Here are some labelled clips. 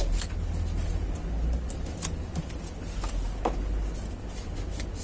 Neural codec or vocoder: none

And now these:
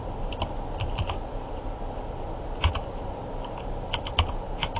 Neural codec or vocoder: none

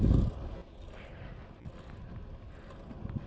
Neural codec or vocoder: none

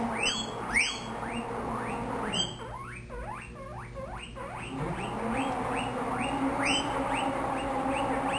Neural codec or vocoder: none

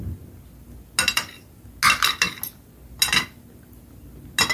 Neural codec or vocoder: none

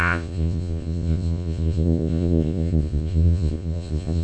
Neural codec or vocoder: vocoder, Vocos